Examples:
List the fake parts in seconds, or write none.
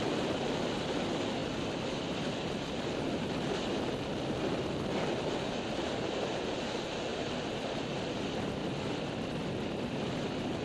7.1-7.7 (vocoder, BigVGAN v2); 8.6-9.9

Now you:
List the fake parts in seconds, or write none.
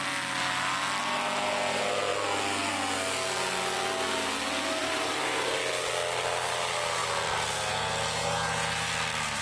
4.8-5.6 (vocoder, BigVGAN v2)